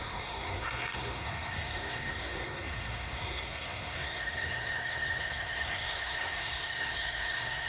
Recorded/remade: remade